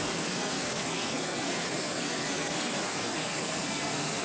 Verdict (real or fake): fake